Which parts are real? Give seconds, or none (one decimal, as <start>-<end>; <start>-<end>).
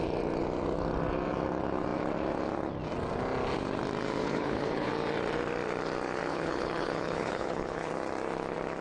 0.0-4.2; 4.9-6.2; 7.9-8.8